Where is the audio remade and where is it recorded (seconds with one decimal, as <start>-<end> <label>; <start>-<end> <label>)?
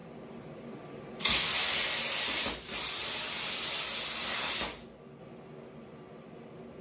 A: 0.0-1.1 remade; 1.1-6.8 recorded